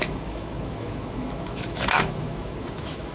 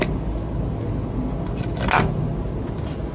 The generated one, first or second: first